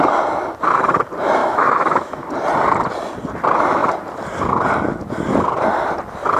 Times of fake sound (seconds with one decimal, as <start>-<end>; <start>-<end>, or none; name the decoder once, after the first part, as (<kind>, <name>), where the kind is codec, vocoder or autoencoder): 1.4-2.3 (autoencoder, DAC-VAE)